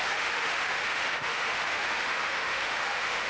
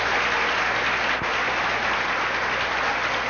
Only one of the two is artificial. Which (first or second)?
first